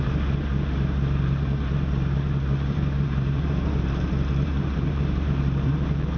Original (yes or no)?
no